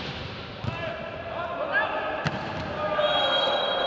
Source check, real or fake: real